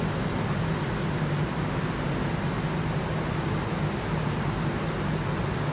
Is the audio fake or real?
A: real